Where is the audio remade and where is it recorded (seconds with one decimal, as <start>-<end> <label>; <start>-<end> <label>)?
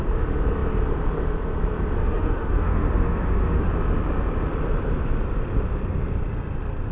0.0-2.0 recorded; 2.0-3.7 remade; 3.7-6.9 recorded